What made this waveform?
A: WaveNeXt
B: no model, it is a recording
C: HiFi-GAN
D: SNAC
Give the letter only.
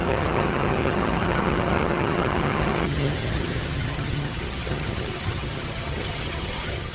C